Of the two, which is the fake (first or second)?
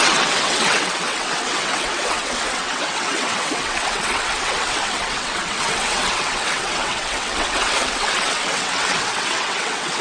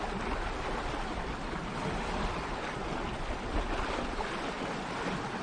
first